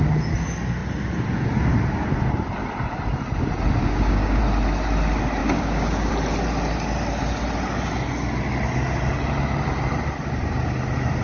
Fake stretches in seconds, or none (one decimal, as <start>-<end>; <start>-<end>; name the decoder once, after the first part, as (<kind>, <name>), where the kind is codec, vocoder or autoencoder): 3.8-4.4 (codec, DAC); 5.4-6.1